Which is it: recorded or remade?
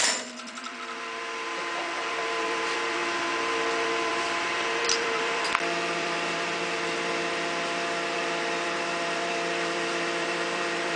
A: remade